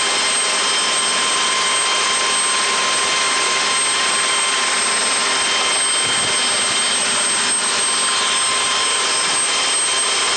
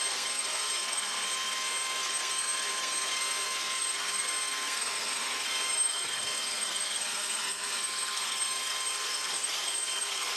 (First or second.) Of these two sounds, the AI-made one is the second